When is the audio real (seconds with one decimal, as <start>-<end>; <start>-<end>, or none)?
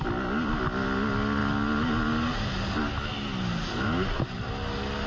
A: 0.0-5.1